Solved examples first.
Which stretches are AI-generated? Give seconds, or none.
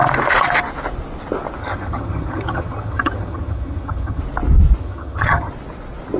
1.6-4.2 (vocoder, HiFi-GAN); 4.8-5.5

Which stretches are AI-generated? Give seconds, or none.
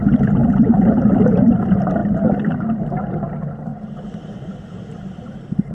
0.4-1.6 (vocoder, BigVGAN v2); 3.7-5.7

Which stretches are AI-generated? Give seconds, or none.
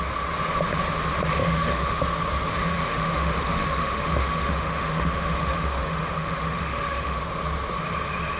1.4-2.0 (autoencoder, DAC-VAE); 2.7-7.2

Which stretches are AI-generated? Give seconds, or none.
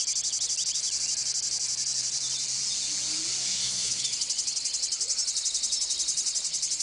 3.4-4.0 (codec, SNAC)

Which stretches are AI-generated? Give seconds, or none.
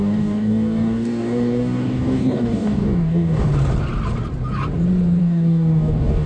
0.0-3.5 (codec, DAC); 5.2-6.3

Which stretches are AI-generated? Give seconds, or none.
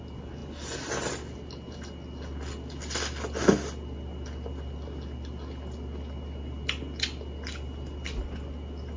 none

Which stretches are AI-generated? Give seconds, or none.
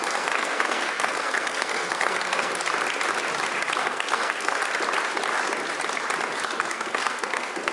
0.0-2.5 (codec, SNAC); 3.8-4.6; 6.6-7.7